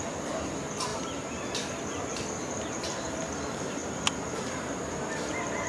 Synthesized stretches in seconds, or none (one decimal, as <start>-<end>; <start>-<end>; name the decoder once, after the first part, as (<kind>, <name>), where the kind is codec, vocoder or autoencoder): none